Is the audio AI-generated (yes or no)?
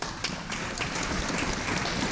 no